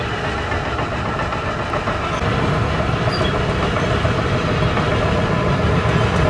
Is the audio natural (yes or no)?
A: yes